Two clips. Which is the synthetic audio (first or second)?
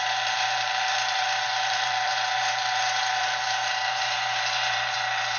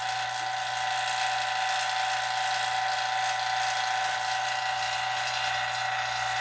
first